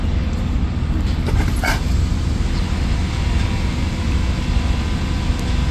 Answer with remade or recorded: recorded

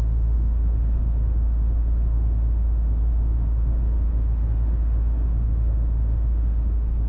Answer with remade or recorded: remade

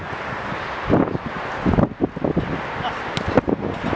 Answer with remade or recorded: recorded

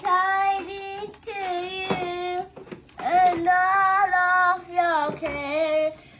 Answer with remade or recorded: recorded